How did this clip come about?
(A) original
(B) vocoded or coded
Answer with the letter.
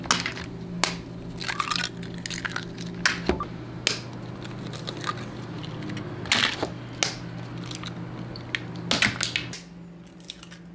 A